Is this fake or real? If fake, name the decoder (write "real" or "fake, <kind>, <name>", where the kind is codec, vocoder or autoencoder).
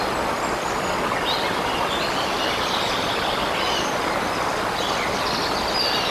real